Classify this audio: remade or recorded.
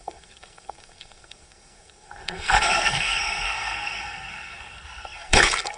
remade